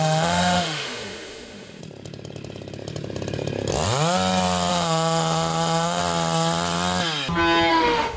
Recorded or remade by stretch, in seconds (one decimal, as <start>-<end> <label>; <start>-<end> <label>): 0.0-1.8 remade; 1.8-4.7 recorded; 4.7-6.0 remade; 6.0-7.7 recorded; 7.7-8.2 remade